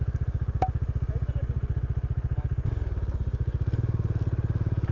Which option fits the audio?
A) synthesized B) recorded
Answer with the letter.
B